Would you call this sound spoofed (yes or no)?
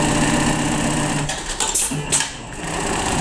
no